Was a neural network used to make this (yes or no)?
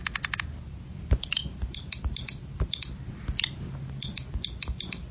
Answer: no